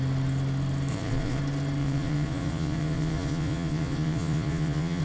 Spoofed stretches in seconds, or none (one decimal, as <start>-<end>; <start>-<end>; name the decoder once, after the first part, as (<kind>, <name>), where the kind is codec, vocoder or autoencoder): 0.9-1.4 (vocoder, Vocos); 1.8-5.0